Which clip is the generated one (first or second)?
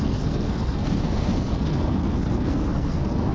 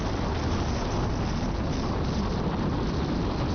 first